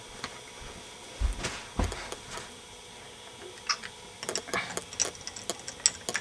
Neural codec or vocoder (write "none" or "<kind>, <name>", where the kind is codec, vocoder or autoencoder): none